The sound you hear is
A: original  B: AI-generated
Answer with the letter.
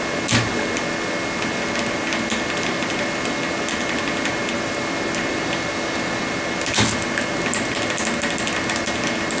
A